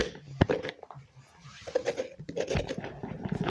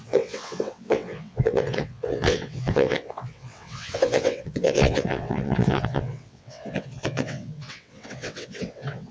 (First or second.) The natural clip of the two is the first